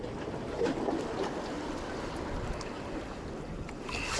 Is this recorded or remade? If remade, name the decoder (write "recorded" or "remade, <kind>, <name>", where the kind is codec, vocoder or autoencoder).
recorded